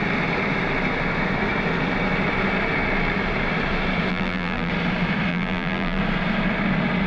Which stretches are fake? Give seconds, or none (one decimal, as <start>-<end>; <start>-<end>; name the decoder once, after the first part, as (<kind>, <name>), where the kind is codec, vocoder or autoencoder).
4.1-4.7 (vocoder, BigVGAN v2); 5.3-6.0